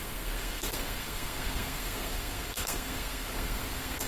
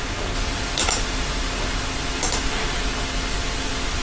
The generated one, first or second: first